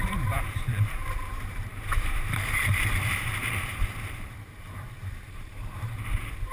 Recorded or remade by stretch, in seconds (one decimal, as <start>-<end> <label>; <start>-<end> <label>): 0.0-6.5 remade